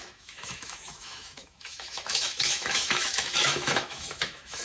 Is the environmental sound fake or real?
fake